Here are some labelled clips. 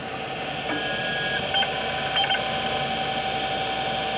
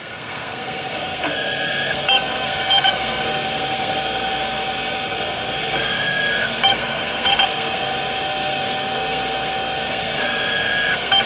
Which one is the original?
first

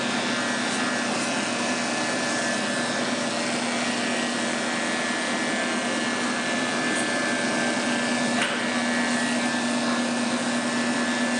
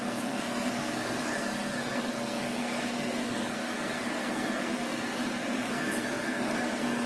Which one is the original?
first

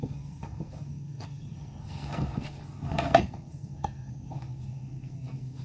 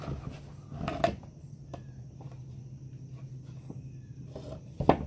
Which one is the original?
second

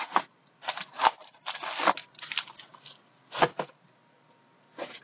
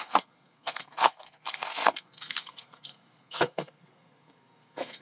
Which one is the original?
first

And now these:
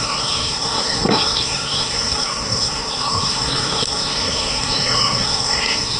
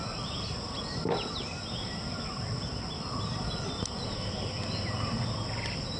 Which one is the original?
second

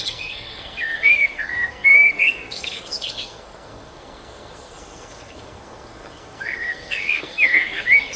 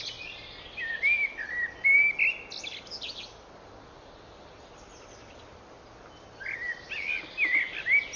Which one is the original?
second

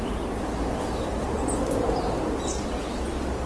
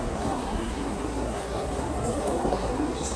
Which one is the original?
first